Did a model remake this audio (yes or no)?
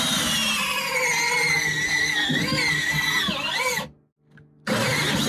no